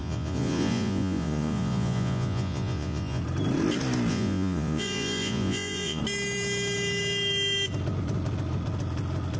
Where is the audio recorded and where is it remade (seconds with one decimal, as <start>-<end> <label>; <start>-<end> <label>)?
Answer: 0.0-3.2 remade; 3.2-4.1 recorded; 4.1-6.0 remade; 6.0-9.4 recorded